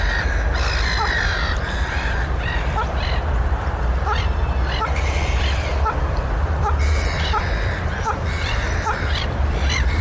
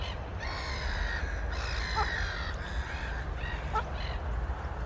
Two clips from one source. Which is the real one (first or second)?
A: second